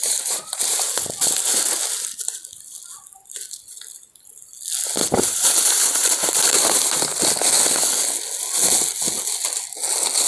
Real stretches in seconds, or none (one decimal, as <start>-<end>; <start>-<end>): 0.9-5.0; 7.2-10.3